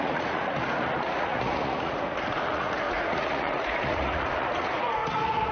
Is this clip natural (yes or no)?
no